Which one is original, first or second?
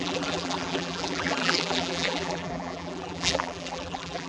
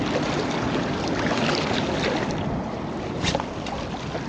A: second